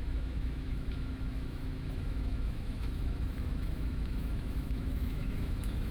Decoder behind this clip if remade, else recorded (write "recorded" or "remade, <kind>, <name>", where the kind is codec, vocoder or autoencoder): remade, autoencoder, DAC-VAE